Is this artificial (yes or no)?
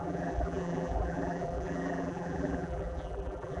yes